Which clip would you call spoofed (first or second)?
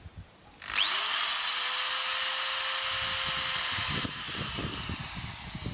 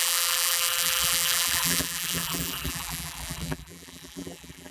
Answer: second